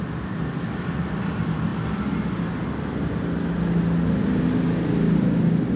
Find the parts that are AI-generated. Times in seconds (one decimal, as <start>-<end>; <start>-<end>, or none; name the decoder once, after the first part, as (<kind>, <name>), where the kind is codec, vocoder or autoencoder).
none